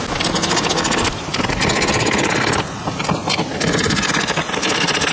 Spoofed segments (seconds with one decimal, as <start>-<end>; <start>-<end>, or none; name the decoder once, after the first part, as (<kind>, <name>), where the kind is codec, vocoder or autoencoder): none